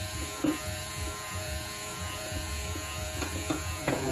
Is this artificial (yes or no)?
yes